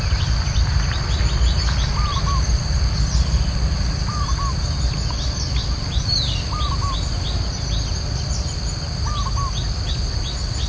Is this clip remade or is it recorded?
recorded